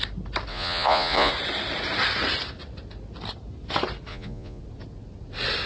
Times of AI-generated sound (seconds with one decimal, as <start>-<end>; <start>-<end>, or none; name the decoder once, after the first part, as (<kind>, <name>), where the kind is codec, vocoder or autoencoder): 0.5-1.3 (vocoder, Vocos); 4.1-4.6